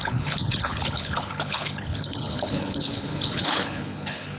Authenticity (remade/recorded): remade